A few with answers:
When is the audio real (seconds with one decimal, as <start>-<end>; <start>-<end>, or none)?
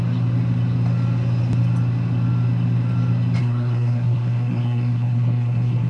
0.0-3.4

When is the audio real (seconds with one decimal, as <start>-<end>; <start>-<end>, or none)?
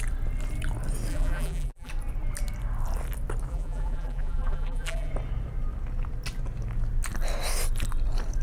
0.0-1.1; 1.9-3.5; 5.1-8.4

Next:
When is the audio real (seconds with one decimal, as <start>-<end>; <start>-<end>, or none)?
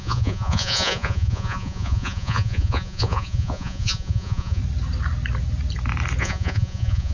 4.6-6.2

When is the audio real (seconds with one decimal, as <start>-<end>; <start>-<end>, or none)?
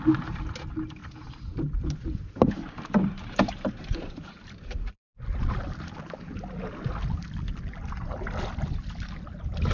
0.0-1.0; 5.0-9.7